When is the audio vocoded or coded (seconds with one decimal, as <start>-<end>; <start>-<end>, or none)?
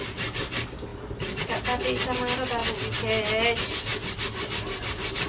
none